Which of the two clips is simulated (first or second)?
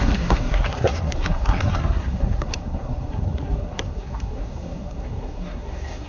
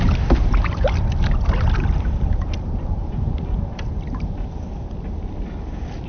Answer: first